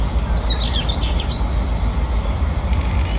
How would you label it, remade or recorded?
recorded